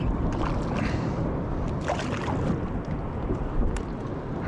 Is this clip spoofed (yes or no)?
no